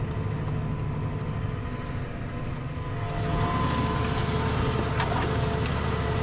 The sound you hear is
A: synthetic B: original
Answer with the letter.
B